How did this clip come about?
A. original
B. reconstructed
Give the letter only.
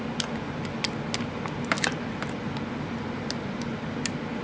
A